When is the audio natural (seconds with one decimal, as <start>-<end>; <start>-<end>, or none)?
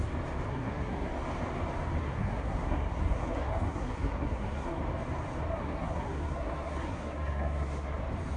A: 0.0-0.5; 1.1-2.0; 4.8-5.5; 8.0-8.4